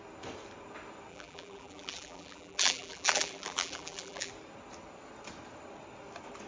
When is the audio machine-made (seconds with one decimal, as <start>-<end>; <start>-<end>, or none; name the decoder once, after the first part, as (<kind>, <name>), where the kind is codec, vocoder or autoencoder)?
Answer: 1.1-4.3 (vocoder, BigVGAN v2)